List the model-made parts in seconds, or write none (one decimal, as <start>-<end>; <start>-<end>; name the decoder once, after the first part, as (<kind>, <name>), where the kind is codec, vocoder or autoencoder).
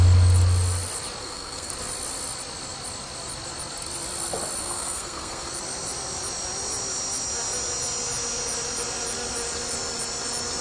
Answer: 1.2-1.7 (codec, SNAC); 4.6-5.5